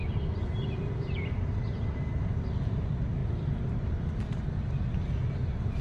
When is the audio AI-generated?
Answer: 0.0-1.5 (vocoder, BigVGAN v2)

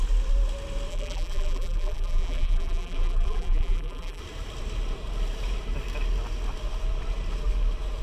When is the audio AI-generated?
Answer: 0.9-4.2 (vocoder, BigVGAN v2)

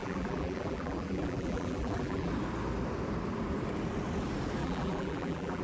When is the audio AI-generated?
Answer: 0.0-2.3 (vocoder, BigVGAN v2); 4.6-5.6

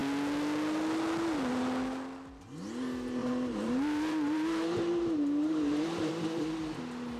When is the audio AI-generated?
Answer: 3.2-6.1 (vocoder, BigVGAN v2)

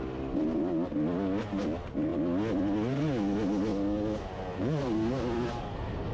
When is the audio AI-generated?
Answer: none

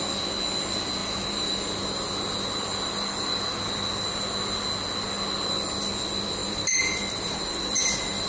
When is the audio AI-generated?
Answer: 1.0-4.6 (vocoder, BigVGAN v2); 6.4-7.6

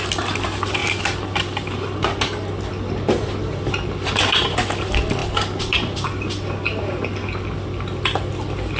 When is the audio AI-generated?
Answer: none

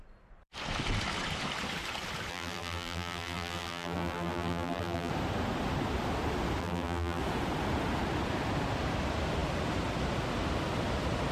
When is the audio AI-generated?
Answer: 2.3-5.1 (vocoder, BigVGAN v2); 6.6-7.2